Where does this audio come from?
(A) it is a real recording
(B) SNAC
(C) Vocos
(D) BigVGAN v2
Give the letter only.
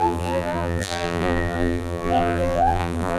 D